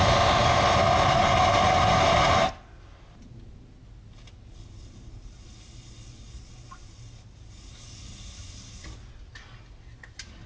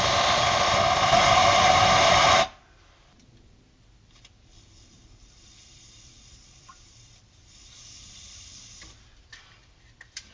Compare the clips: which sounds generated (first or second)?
second